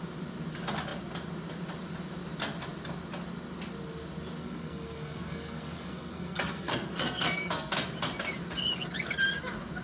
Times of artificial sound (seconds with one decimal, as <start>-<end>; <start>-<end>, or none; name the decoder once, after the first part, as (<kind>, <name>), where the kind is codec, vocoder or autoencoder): 4.4-7.7 (codec, SNAC)